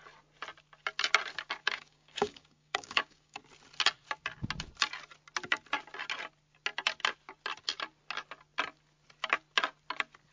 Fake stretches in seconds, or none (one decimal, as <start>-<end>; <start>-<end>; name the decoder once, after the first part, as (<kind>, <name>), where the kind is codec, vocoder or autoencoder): 1.6-3.4 (codec, DAC)